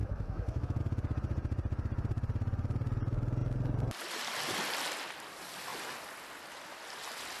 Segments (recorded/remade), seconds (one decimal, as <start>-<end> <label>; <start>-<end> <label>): 0.0-0.8 remade; 0.8-7.4 recorded